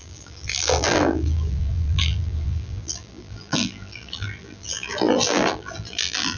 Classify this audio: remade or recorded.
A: remade